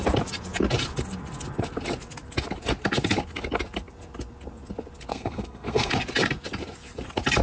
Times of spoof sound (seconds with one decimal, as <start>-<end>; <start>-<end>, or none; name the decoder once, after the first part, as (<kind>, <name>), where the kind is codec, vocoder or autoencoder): 5.1-5.9 (codec, SNAC)